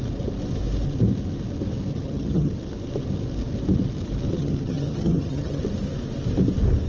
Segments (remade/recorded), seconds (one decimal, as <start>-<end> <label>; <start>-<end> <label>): 0.0-1.9 recorded; 1.9-2.5 remade; 2.5-4.3 recorded; 4.3-5.6 remade; 5.6-6.9 recorded